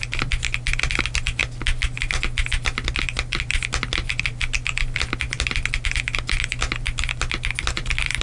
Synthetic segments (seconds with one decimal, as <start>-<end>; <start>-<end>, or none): none